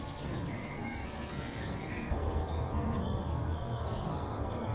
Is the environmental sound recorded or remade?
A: remade